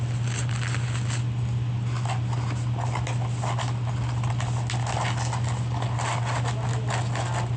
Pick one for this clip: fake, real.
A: real